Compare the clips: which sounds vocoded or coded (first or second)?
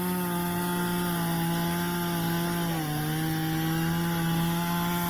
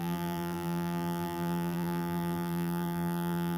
second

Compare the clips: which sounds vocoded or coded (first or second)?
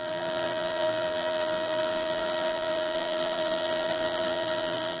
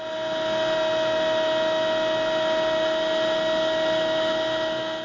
first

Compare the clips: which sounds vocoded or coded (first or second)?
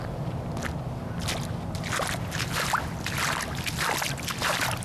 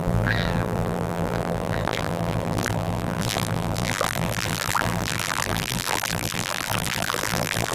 second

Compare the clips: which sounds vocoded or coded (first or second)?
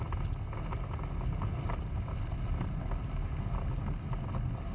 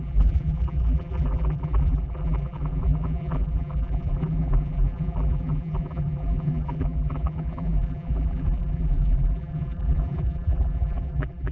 second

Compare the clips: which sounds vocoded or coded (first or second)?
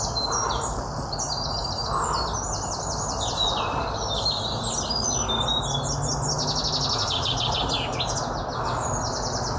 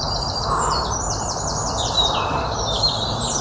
second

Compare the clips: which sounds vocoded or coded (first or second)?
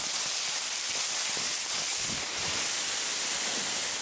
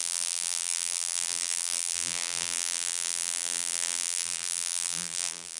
second